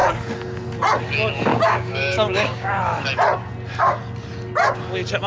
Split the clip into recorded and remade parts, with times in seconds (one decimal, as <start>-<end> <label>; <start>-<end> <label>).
0.0-1.5 recorded; 1.5-2.8 remade; 2.8-5.3 recorded